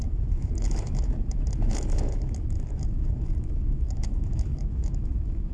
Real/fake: fake